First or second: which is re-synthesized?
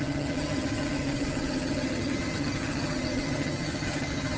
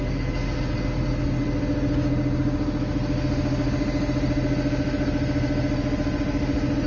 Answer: first